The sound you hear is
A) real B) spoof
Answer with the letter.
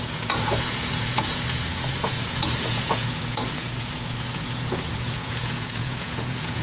B